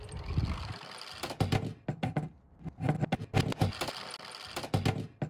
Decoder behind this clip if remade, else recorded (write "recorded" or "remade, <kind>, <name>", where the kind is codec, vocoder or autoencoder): recorded